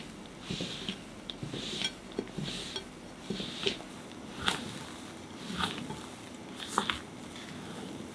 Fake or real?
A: real